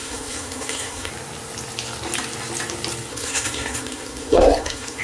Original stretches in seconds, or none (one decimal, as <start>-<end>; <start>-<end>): 1.1-3.1